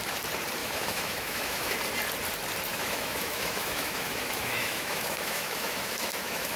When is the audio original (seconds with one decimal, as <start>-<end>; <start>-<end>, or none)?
0.0-0.6; 1.8-2.7